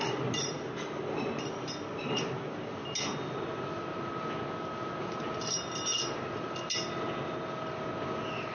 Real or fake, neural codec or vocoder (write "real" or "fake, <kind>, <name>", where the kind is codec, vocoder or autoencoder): real